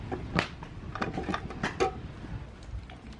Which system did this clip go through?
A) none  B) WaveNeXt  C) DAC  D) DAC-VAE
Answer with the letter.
A